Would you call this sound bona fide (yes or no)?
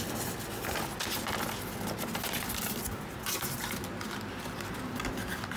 yes